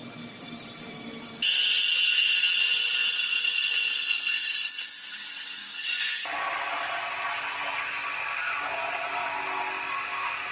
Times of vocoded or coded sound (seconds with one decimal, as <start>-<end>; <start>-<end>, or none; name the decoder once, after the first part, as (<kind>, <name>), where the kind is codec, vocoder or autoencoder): 0.0-3.0 (vocoder, BigVGAN v2); 4.9-5.6; 9.9-10.5